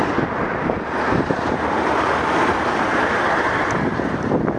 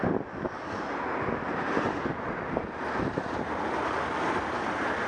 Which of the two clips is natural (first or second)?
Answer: second